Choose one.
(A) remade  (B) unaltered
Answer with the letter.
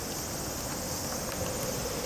B